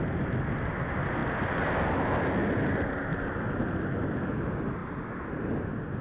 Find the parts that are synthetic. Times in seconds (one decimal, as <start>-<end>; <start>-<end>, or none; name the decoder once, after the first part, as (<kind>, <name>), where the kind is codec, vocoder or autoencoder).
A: none